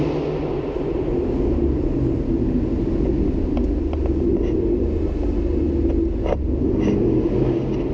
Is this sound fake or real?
real